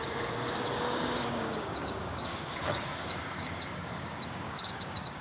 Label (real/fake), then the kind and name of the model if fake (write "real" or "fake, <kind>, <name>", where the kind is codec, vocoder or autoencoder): fake, codec, DAC